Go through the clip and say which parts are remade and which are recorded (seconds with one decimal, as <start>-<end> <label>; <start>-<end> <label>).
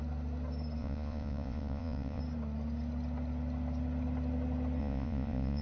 0.0-0.8 recorded; 0.8-2.2 remade; 2.2-4.8 recorded; 4.8-5.6 remade